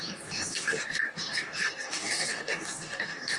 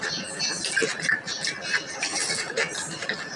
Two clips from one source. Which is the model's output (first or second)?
first